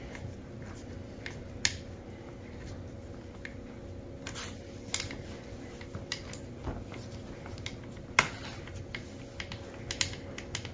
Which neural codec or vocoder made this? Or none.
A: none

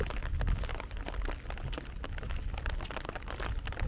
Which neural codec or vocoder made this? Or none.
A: none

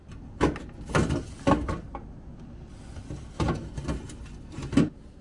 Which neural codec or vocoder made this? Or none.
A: none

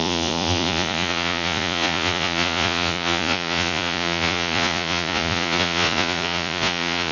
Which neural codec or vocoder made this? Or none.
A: vocoder, Vocos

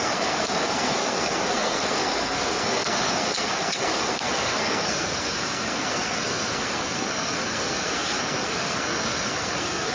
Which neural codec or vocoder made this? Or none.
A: codec, SNAC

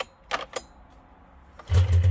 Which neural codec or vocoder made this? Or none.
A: none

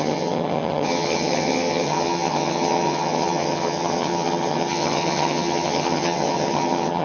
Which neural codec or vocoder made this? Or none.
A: vocoder, HiFi-GAN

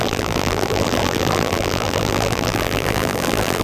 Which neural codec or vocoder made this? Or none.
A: vocoder, BigVGAN v2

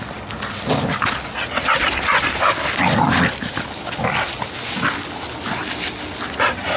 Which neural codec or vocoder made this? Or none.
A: none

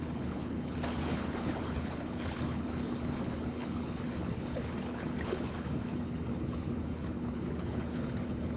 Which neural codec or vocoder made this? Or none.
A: codec, HILCodec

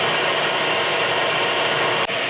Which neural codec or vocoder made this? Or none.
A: none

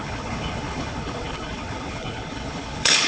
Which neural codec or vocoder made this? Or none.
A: codec, HILCodec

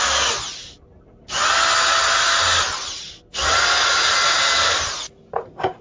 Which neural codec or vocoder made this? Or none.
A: none